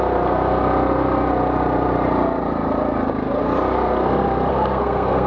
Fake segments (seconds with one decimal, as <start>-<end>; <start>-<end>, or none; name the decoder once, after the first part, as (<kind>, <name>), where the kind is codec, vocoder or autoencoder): 4.5-5.3 (codec, SNAC)